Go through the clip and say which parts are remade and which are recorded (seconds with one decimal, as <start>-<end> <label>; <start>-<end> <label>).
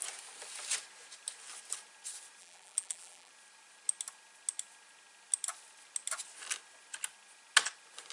0.0-2.4 recorded; 2.4-3.3 remade; 3.3-8.1 recorded